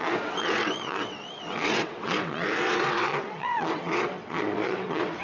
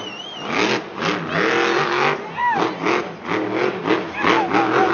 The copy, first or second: first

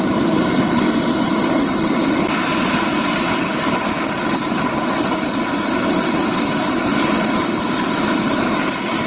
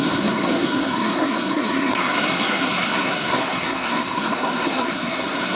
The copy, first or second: second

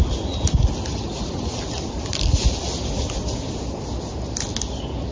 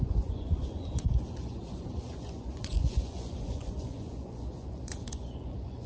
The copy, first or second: second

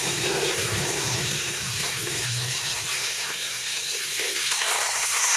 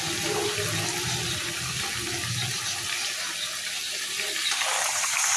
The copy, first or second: first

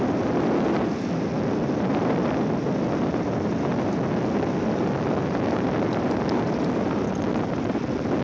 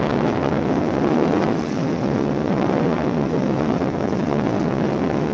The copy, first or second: second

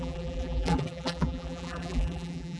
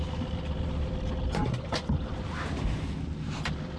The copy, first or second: first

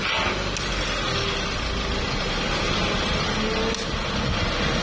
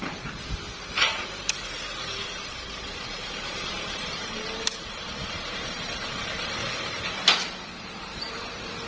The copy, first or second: second